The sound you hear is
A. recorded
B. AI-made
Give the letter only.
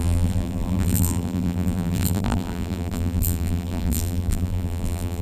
B